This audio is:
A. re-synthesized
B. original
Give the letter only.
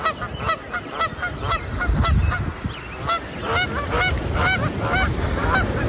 B